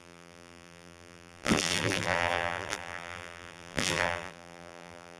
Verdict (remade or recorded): remade